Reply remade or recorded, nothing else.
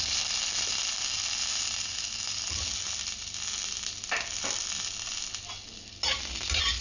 recorded